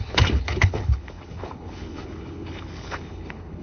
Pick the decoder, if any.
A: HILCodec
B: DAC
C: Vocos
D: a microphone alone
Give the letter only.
A